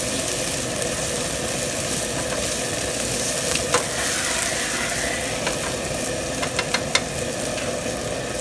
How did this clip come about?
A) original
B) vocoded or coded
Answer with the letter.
A